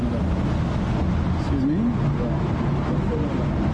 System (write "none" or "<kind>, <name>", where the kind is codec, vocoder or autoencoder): none